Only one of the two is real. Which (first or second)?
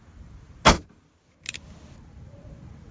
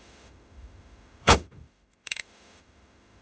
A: first